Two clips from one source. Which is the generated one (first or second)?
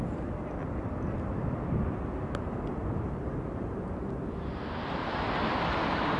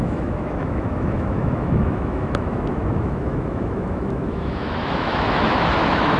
second